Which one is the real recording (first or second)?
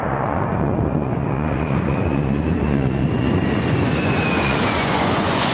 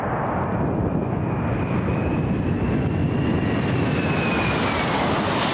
second